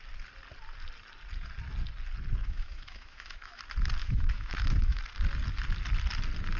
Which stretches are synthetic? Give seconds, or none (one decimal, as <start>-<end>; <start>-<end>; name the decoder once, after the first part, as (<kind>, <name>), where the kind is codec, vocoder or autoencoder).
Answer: 2.4-3.6 (autoencoder, DAC-VAE); 4.0-5.0

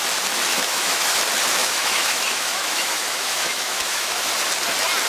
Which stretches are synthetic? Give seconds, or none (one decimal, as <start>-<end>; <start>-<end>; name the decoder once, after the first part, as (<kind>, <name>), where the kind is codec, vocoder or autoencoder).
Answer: 0.5-1.2 (autoencoder, DAC-VAE); 1.6-4.3

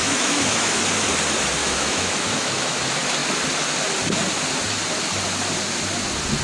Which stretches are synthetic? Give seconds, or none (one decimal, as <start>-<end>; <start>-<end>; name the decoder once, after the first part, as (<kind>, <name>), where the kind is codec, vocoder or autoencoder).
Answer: 0.0-0.8 (autoencoder, DAC-VAE); 1.6-2.8

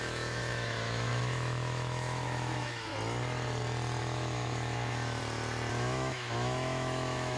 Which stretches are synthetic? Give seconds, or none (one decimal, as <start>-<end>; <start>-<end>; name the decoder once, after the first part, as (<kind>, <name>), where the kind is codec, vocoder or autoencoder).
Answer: 0.0-2.9 (autoencoder, DAC-VAE); 4.0-5.2; 5.7-7.4

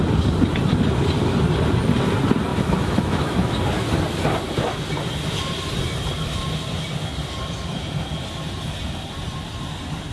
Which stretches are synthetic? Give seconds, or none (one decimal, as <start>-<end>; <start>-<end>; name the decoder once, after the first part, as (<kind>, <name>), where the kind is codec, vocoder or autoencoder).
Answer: 2.5-3.6 (autoencoder, DAC-VAE)

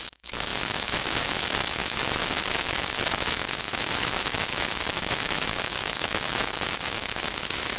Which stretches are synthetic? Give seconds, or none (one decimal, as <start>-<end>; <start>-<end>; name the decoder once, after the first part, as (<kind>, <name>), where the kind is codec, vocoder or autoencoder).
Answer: 0.0-7.8 (autoencoder, DAC-VAE)

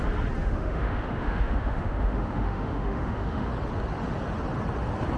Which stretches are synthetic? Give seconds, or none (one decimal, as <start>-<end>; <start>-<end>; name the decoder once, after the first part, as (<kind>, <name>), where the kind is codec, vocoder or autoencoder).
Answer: 0.4-3.5 (autoencoder, DAC-VAE)